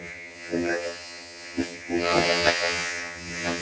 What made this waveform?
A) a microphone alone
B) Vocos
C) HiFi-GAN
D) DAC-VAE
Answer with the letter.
C